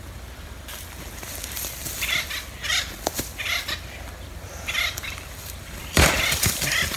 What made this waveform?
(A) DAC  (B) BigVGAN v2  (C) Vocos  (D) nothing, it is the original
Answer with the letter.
B